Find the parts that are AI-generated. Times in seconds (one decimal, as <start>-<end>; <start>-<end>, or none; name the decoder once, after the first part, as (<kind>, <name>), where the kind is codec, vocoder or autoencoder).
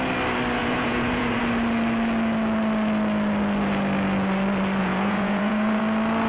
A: 0.6-1.4 (vocoder, Vocos); 4.8-5.8